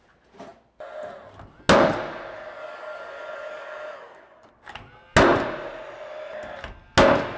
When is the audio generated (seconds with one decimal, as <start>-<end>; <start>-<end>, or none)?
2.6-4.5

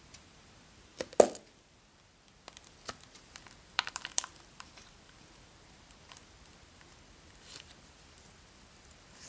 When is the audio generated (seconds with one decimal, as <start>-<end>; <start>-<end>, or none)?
0.0-0.9; 1.9-9.3

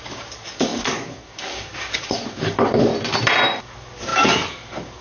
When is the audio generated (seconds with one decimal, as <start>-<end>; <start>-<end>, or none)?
0.0-2.9; 3.6-5.0

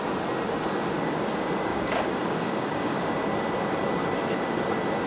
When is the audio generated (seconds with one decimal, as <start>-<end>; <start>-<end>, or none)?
1.7-3.1

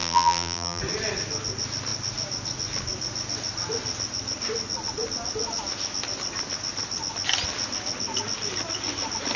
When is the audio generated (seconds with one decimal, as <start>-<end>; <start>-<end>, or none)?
0.0-0.8

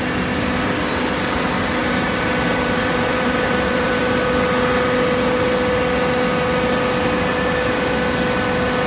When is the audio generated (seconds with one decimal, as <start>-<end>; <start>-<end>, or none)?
1.8-4.0

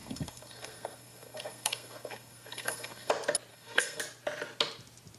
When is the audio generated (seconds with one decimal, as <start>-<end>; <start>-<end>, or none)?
0.0-3.1; 3.5-4.0

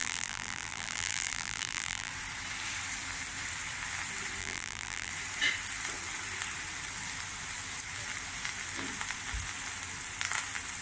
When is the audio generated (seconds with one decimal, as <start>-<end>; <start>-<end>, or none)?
0.0-2.1; 4.4-5.1